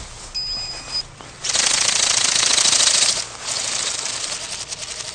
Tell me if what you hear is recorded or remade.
recorded